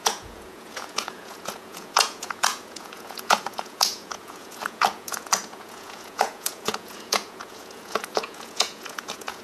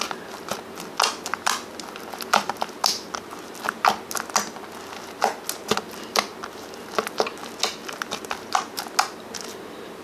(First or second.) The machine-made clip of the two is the first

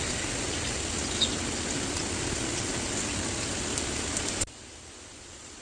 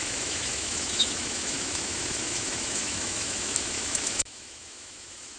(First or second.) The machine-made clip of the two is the second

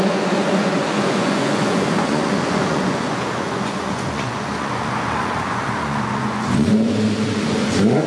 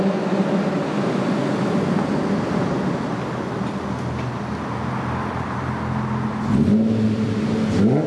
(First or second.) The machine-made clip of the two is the first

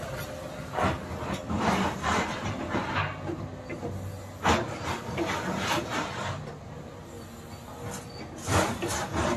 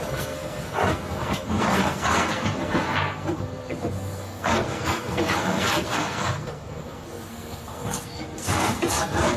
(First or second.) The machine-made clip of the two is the second